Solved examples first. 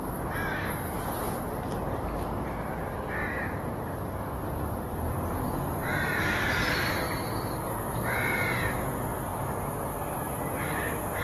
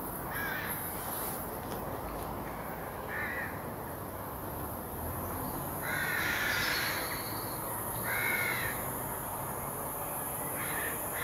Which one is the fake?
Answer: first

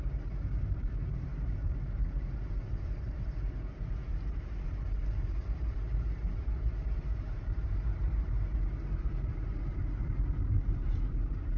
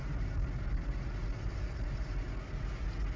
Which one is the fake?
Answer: first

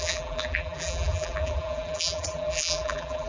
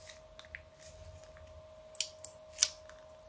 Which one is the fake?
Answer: first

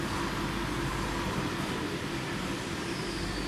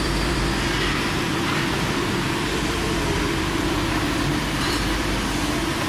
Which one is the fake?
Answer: second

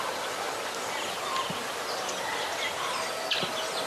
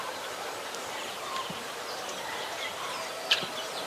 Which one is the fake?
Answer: second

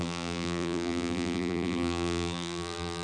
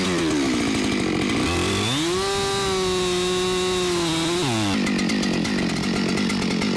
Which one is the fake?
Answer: first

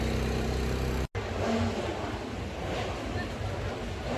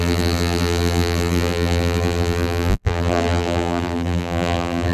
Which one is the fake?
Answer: second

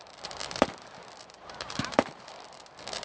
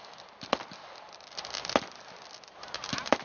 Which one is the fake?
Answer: first